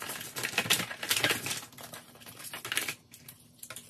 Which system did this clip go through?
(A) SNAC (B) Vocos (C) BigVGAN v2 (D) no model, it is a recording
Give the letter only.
D